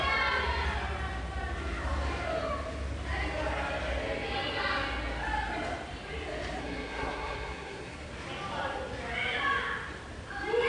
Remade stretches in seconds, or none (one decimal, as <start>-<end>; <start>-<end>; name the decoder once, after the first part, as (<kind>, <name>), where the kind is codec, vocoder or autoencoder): 6.6-8.1 (codec, SNAC)